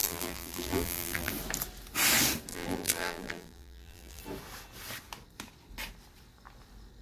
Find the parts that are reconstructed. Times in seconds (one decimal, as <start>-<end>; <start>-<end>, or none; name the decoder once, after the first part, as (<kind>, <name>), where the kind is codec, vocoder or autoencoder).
0.0-1.3 (vocoder, BigVGAN v2); 2.5-4.2